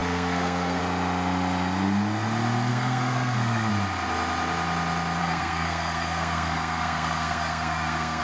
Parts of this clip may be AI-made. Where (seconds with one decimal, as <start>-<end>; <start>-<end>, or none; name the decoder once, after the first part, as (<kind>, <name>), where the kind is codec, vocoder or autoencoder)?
0.0-0.8 (codec, SNAC); 2.7-3.7; 5.2-8.2